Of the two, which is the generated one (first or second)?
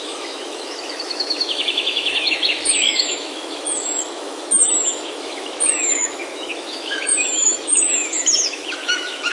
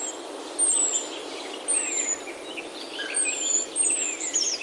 first